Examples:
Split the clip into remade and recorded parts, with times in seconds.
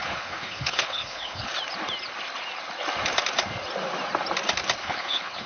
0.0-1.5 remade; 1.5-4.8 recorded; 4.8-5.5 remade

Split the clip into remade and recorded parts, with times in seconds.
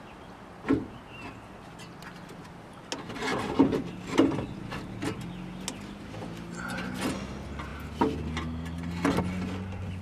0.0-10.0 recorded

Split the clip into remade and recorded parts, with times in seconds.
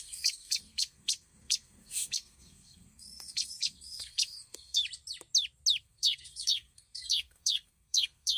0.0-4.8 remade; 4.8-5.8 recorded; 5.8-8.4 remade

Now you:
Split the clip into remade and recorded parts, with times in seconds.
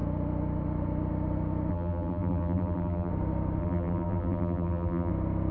0.0-1.7 recorded; 1.7-3.1 remade; 3.1-3.6 recorded; 3.6-5.1 remade; 5.1-5.5 recorded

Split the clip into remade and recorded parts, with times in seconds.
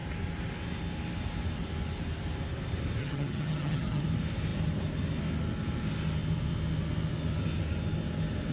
0.0-3.0 recorded; 3.0-4.0 remade; 4.0-8.5 recorded